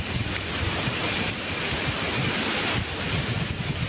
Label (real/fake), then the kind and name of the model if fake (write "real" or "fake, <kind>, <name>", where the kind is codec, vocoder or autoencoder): real